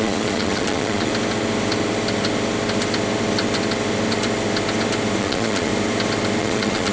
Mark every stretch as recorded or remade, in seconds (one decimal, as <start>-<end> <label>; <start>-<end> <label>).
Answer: 0.0-1.1 remade; 1.1-5.2 recorded; 5.2-5.7 remade; 5.7-6.4 recorded; 6.4-6.9 remade